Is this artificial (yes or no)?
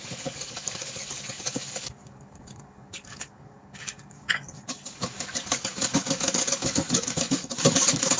yes